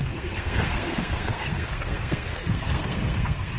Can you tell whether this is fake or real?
fake